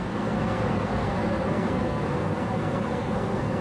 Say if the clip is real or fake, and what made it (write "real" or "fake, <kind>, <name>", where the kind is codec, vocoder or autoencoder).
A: fake, codec, SNAC